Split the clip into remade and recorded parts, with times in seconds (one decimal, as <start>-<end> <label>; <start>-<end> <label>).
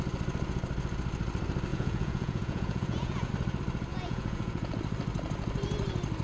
0.0-1.7 recorded; 1.7-3.3 remade; 3.3-3.9 recorded; 3.9-4.7 remade; 4.7-6.2 recorded